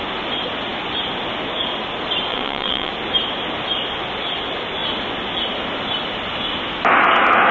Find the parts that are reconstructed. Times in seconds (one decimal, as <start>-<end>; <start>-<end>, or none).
2.3-2.9